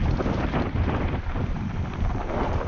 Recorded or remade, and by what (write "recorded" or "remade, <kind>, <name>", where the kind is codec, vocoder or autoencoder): recorded